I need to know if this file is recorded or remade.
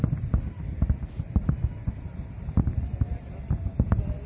recorded